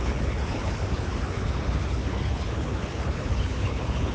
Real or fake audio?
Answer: fake